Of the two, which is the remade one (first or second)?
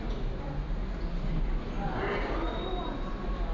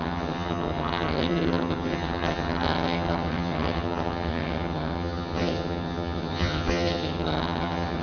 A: second